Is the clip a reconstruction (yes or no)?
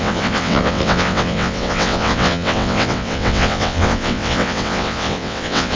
yes